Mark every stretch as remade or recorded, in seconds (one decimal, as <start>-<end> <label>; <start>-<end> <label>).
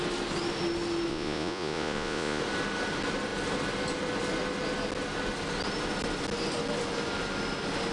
0.0-1.1 recorded; 1.1-2.4 remade; 2.4-7.9 recorded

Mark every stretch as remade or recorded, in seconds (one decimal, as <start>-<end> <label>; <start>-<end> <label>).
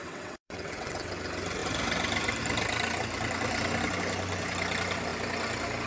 0.0-1.1 remade; 1.1-5.9 recorded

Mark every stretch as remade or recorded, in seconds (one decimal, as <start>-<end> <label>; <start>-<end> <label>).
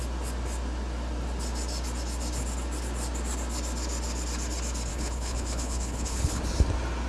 0.0-4.9 recorded; 4.9-6.4 remade; 6.4-7.1 recorded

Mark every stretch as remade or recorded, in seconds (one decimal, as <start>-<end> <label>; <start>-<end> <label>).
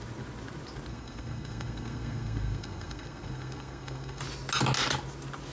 0.0-0.9 recorded; 0.9-4.2 remade; 4.2-5.5 recorded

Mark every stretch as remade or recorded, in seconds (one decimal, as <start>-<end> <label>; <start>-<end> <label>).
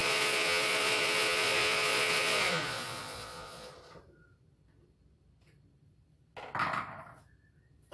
0.0-3.7 remade; 3.7-7.9 recorded